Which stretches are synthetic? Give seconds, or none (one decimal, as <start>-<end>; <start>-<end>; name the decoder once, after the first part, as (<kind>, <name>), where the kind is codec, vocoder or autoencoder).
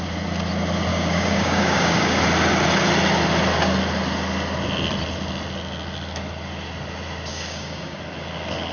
0.9-2.2 (codec, DAC); 7.3-8.0